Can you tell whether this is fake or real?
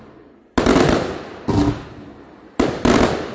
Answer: real